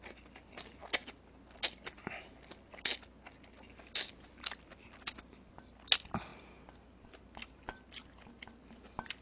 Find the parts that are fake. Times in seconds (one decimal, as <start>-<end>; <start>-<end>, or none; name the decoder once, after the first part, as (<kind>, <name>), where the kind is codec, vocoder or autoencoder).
none